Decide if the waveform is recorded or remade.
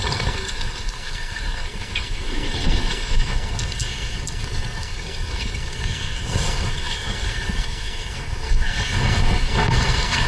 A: remade